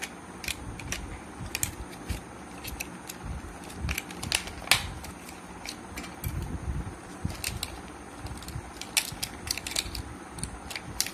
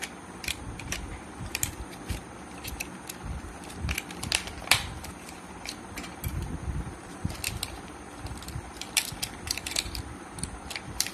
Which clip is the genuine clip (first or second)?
first